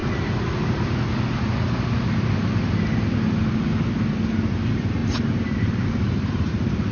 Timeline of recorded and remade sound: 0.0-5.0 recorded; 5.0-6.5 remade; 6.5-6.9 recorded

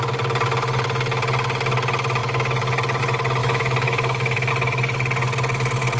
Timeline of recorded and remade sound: 0.0-3.4 recorded; 3.4-4.5 remade; 4.5-6.0 recorded

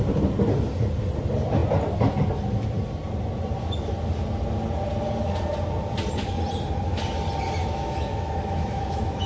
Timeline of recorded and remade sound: 0.0-7.6 recorded; 7.6-9.3 remade